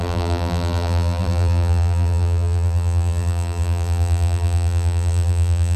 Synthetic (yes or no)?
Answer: yes